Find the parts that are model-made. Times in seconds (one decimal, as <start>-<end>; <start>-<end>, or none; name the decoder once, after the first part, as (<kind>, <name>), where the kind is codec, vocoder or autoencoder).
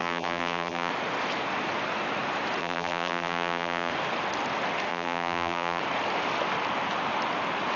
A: 0.0-0.9 (vocoder, BigVGAN v2); 2.6-3.9; 4.9-5.8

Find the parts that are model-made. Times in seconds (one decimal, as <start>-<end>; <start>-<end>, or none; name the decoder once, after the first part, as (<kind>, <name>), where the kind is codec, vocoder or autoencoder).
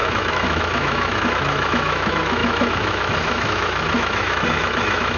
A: 0.0-5.2 (autoencoder, DAC-VAE)